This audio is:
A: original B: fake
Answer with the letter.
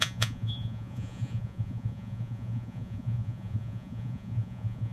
B